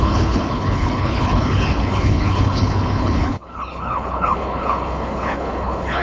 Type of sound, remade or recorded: remade